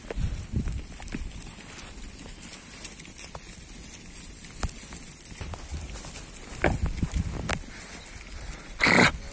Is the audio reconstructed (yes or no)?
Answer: no